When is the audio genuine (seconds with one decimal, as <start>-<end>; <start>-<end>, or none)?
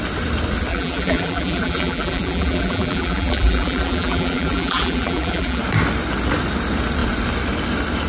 0.0-0.7; 5.6-8.1